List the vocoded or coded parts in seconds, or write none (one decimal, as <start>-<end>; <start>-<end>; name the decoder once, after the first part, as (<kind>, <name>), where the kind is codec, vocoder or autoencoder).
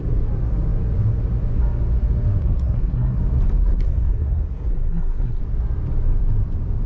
2.4-3.2 (codec, SNAC); 3.6-5.4